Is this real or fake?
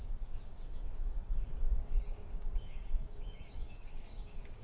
fake